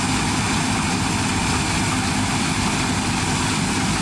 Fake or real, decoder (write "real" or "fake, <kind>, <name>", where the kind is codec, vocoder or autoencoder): real